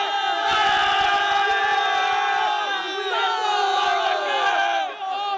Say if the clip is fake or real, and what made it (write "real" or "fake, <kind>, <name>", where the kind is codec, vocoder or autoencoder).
real